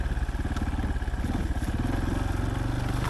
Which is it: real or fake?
real